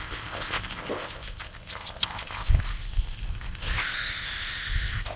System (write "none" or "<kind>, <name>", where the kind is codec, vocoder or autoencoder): codec, ZipCodec